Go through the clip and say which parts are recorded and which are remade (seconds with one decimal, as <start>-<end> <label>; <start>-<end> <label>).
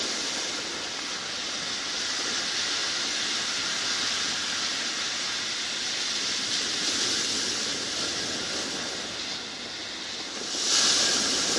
0.0-11.6 recorded